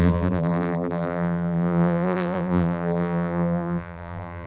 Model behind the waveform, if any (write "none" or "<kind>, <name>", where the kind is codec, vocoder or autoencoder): vocoder, BigVGAN v2